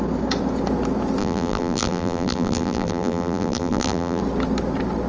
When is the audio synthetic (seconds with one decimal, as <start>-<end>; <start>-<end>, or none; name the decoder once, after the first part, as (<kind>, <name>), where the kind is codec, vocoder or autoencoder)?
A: 1.2-4.2 (vocoder, BigVGAN v2)